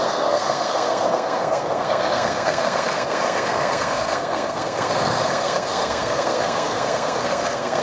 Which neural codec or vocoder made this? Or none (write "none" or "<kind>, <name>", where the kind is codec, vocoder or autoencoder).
codec, SNAC